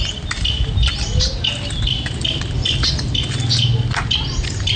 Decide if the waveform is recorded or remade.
recorded